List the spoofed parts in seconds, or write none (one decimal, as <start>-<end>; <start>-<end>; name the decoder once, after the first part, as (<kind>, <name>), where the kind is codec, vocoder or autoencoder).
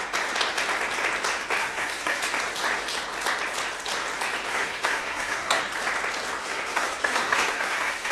1.6-2.2 (codec, SNAC); 4.5-5.6; 6.4-8.1